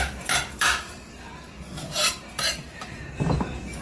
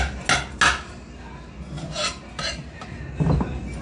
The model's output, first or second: first